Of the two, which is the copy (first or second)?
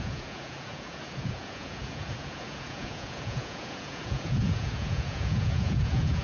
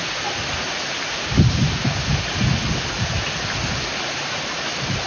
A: first